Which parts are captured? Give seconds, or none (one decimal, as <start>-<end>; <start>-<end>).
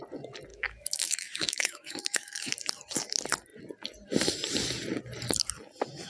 0.0-0.5; 2.5-6.1